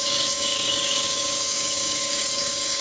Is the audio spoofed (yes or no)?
yes